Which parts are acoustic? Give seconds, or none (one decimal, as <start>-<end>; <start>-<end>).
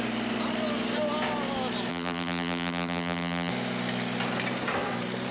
0.0-1.9; 3.5-5.3